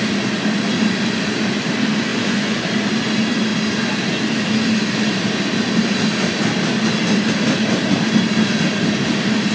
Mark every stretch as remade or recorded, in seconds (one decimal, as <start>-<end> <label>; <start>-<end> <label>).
0.0-2.1 recorded; 2.1-2.6 remade; 2.6-9.5 recorded